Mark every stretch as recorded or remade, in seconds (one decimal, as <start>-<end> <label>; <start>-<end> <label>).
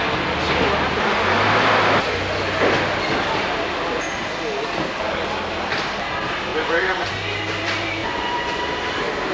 0.0-6.5 recorded; 6.5-7.1 remade; 7.1-8.0 recorded; 8.0-8.6 remade; 8.6-9.3 recorded